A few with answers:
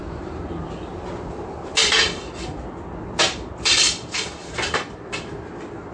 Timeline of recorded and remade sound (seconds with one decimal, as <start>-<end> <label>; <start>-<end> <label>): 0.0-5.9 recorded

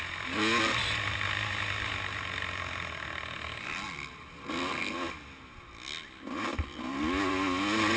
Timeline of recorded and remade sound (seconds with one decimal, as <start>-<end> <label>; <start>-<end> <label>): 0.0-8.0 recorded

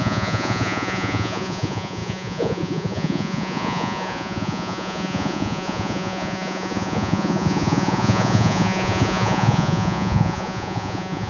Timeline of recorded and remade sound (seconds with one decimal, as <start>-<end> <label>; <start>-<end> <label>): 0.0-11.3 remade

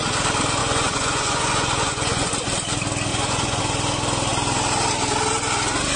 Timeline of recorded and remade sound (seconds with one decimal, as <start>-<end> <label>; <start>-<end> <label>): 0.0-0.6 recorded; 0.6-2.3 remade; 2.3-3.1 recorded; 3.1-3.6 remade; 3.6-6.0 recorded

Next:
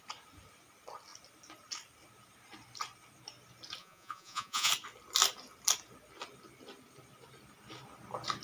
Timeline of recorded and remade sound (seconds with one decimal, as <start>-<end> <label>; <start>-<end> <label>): 0.0-3.8 recorded; 3.8-4.7 remade; 4.7-8.4 recorded

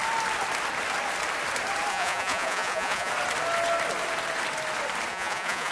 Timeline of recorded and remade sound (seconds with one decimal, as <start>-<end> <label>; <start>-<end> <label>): 0.0-1.9 recorded; 1.9-3.1 remade; 3.1-5.1 recorded; 5.1-5.7 remade

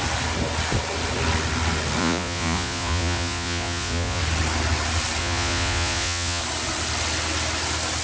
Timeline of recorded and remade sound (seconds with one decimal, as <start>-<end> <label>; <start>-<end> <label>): 0.0-2.0 recorded; 2.0-4.2 remade; 4.2-5.2 recorded; 5.2-6.4 remade; 6.4-8.0 recorded

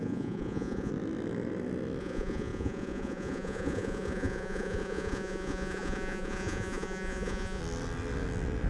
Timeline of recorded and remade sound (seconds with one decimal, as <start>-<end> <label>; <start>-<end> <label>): 0.0-0.9 remade; 0.9-2.0 recorded; 2.0-7.6 remade; 7.6-8.7 recorded